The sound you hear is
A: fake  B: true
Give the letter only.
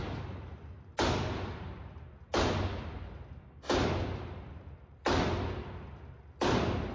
B